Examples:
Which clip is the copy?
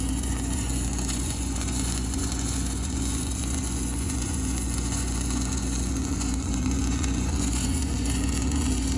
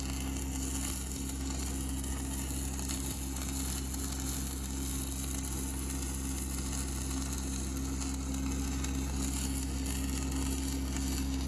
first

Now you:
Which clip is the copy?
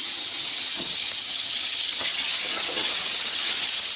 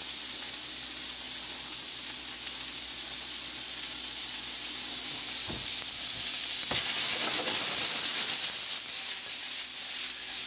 first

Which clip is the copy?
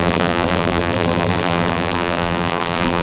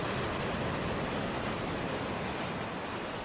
first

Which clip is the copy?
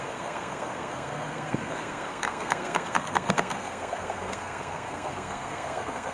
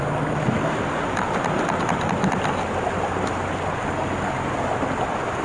first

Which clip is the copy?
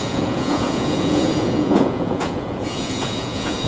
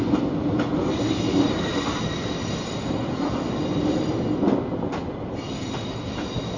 first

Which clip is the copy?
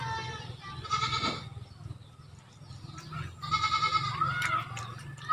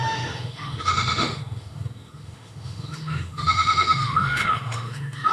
second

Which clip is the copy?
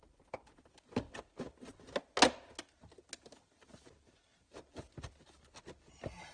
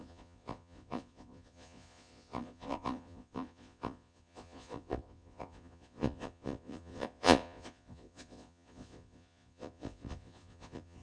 second